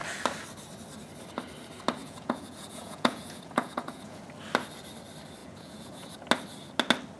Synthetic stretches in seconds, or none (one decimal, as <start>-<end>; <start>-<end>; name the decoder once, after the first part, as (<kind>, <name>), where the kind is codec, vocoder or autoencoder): 2.0-4.2 (vocoder, Vocos); 5.4-6.1

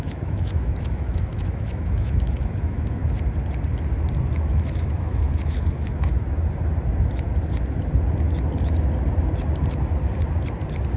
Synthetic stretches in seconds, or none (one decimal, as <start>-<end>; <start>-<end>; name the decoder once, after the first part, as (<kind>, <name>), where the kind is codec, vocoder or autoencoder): 0.0-3.0 (autoencoder, DAC-VAE); 4.5-6.1

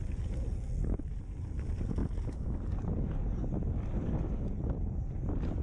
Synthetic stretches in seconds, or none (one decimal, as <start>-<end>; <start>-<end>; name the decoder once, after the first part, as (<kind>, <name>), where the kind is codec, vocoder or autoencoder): 2.0-2.8 (vocoder, BigVGAN v2)

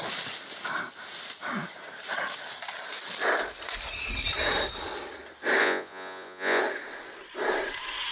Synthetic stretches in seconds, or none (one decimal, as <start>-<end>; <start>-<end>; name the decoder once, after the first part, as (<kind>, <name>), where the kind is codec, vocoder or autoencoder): 5.6-6.6 (vocoder, Vocos)

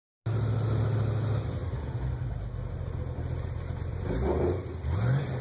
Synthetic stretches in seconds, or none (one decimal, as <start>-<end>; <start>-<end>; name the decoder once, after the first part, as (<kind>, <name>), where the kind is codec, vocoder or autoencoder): none

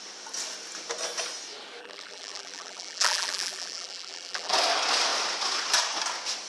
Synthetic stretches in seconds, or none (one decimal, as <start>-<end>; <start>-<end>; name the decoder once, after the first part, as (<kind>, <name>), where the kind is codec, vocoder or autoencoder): 1.8-4.5 (vocoder, BigVGAN v2)